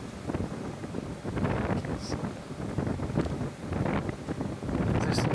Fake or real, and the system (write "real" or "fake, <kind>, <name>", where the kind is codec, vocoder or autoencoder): real